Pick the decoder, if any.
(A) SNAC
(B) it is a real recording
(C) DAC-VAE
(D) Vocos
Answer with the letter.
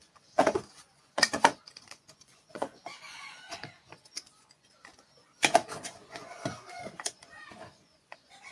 D